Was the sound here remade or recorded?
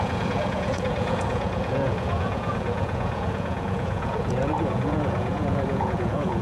remade